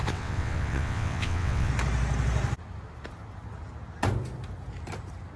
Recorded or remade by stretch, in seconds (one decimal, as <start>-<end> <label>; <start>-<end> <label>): 0.0-1.7 remade; 1.7-5.4 recorded